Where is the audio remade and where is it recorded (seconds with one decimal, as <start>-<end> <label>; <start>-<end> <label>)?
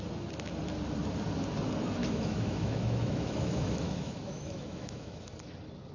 0.0-2.0 recorded; 2.0-5.3 remade; 5.3-5.9 recorded